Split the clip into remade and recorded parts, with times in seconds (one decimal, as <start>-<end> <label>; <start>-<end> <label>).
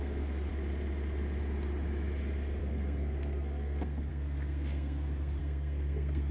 0.0-0.5 remade; 0.5-2.6 recorded; 2.6-6.3 remade